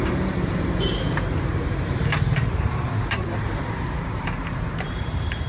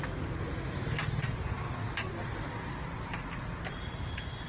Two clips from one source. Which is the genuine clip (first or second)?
second